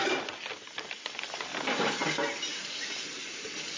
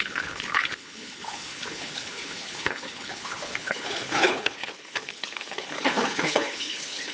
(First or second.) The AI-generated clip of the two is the second